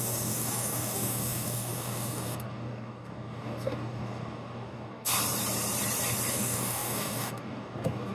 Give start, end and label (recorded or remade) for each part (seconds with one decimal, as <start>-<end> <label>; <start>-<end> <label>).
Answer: 0.0-5.1 remade; 5.1-6.3 recorded; 6.3-8.1 remade